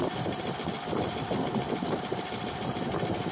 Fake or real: fake